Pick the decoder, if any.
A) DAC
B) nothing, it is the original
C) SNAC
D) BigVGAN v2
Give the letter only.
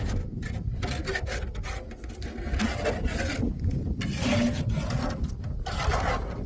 B